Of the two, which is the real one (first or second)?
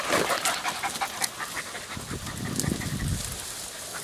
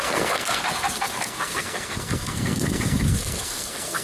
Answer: first